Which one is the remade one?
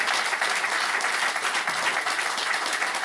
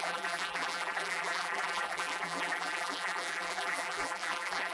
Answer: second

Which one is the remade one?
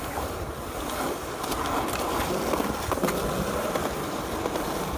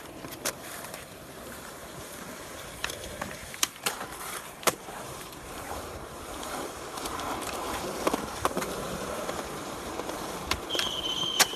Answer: second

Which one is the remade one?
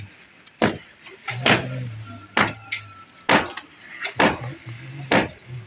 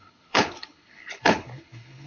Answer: second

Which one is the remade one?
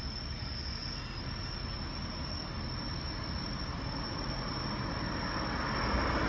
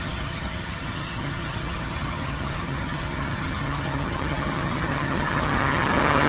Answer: second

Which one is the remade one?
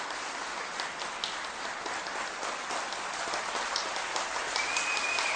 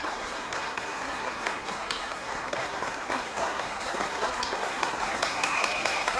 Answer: second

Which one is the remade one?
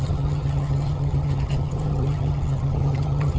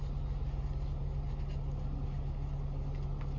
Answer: first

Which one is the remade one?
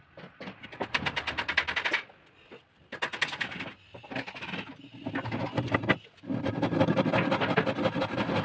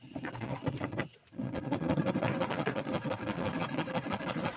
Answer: second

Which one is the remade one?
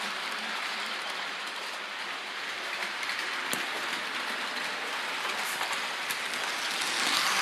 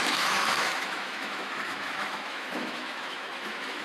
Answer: second